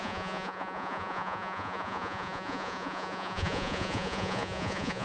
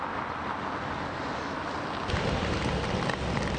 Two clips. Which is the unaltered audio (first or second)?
second